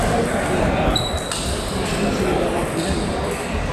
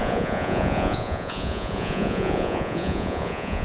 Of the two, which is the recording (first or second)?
first